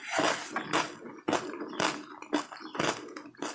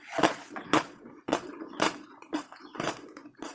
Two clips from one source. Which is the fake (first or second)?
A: second